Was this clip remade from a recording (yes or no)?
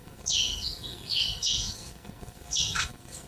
yes